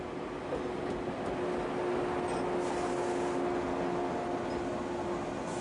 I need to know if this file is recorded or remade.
recorded